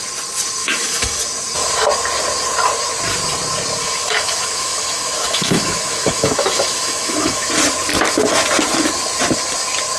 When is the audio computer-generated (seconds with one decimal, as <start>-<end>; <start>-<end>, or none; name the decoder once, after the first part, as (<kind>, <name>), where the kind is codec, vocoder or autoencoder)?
0.6-1.2 (autoencoder, DAC-VAE); 3.8-7.5